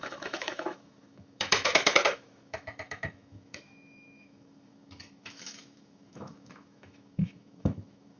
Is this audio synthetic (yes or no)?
yes